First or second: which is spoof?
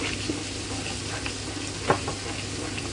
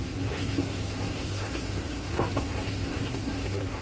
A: second